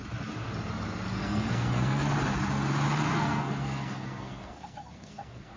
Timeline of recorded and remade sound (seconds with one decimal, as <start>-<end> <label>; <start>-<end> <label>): 0.0-1.2 recorded; 1.2-2.1 remade; 2.1-3.1 recorded; 3.1-5.6 remade